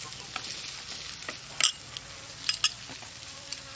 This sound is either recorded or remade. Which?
recorded